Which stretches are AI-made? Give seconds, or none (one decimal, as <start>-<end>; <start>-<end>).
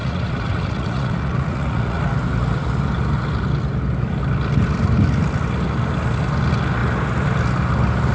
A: 0.0-2.0